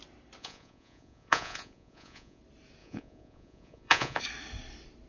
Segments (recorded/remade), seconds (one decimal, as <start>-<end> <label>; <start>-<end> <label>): 0.0-0.4 recorded; 0.4-2.4 remade; 2.4-2.8 recorded; 2.8-4.2 remade; 4.2-5.1 recorded